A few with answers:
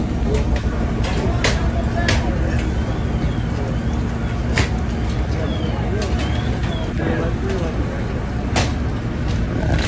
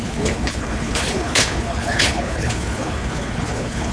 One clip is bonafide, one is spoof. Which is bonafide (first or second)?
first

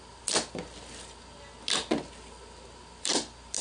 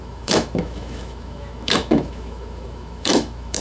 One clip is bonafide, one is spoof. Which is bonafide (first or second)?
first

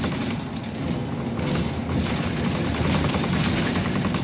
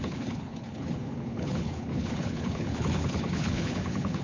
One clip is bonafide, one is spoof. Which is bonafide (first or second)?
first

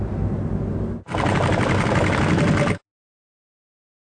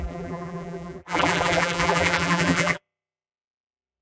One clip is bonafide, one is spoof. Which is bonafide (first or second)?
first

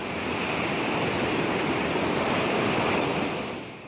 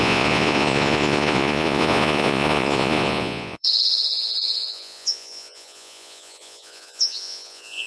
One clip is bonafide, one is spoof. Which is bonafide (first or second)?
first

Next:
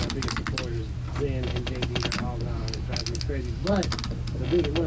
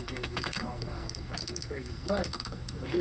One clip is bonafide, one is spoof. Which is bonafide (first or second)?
first